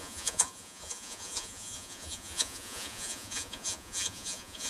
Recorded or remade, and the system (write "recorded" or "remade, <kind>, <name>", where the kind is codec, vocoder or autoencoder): remade, vocoder, Vocos